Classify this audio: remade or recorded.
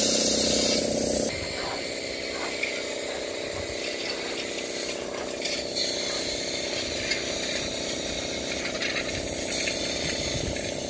recorded